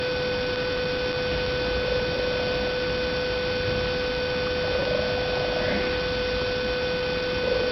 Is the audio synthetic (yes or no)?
no